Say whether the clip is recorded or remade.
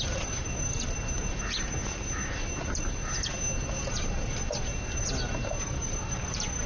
recorded